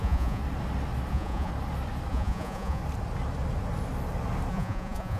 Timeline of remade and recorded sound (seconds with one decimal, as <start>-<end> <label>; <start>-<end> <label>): 0.0-0.4 remade; 0.4-1.1 recorded; 1.1-1.5 remade; 1.5-2.1 recorded; 2.1-2.8 remade; 2.8-4.5 recorded; 4.5-5.2 remade